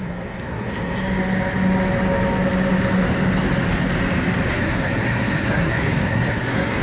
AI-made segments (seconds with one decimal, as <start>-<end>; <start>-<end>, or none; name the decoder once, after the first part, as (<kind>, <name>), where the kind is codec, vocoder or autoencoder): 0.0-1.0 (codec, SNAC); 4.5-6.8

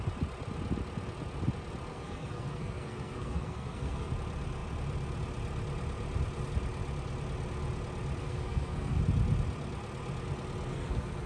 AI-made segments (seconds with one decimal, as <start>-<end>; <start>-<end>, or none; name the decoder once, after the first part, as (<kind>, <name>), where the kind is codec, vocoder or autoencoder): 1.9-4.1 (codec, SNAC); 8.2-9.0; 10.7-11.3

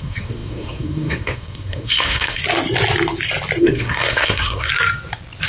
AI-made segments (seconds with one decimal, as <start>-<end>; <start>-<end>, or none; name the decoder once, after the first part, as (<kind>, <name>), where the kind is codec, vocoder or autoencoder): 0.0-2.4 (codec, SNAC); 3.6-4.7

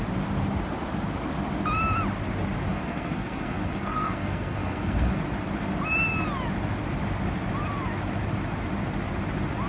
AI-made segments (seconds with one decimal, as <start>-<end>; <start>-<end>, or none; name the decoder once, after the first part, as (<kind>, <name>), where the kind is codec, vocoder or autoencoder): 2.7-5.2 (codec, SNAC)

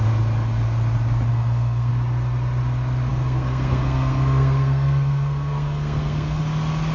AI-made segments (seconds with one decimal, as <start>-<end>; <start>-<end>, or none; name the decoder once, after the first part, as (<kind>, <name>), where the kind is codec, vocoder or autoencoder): 1.3-1.9 (codec, SNAC); 3.1-6.4

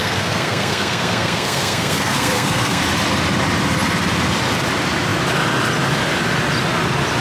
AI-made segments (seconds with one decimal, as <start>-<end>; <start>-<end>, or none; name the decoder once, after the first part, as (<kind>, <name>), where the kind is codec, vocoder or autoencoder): 0.0-2.8 (codec, SNAC)